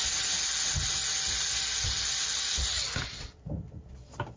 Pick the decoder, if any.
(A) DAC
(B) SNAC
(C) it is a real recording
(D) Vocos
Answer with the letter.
C